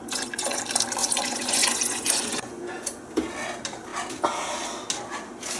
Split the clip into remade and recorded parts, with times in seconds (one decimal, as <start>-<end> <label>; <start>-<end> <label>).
0.0-0.6 remade; 0.6-1.0 recorded; 1.0-3.0 remade; 3.0-5.6 recorded